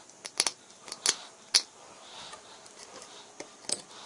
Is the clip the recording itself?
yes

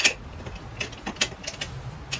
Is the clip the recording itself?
yes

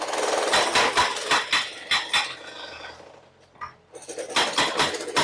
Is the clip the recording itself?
yes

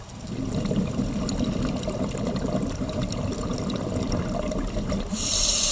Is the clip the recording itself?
yes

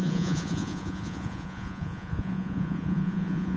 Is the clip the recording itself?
no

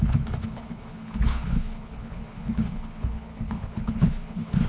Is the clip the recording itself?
no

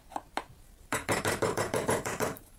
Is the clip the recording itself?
no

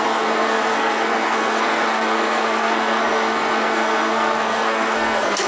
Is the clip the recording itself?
no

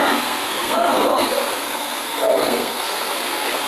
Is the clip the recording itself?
no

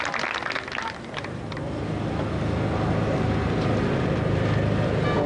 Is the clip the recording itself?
yes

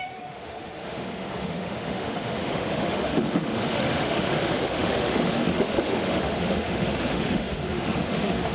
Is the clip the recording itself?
no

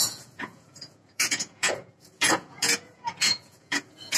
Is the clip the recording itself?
no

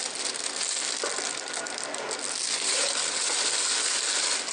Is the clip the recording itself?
yes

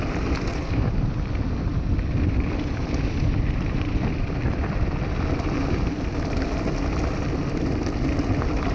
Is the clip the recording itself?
yes